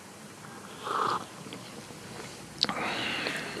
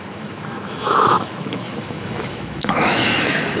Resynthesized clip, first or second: second